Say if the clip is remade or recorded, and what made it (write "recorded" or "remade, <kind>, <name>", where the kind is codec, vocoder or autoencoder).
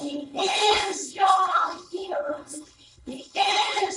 remade, codec, HILCodec